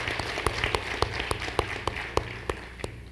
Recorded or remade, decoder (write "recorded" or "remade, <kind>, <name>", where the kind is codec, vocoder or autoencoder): recorded